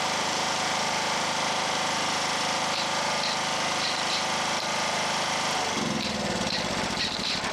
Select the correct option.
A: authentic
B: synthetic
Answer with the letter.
B